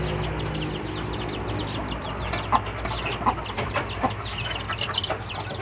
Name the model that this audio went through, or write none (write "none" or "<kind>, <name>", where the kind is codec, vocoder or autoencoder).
none